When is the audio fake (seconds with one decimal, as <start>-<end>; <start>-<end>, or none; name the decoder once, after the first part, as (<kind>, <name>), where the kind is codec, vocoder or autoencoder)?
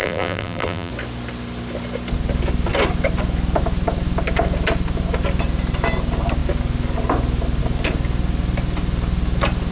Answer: 0.0-0.9 (vocoder, BigVGAN v2)